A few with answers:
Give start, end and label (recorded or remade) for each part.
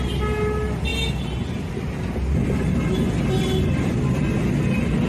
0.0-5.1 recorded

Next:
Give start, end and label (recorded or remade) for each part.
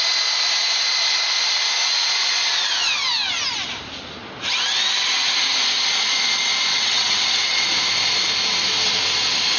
0.0-6.7 recorded; 6.7-7.7 remade; 7.7-9.6 recorded